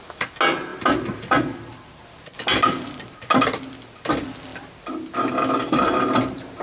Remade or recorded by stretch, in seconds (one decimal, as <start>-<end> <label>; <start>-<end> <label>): 0.0-6.6 recorded